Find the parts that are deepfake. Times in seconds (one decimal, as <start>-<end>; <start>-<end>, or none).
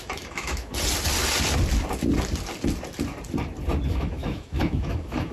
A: 0.0-0.7; 3.9-5.3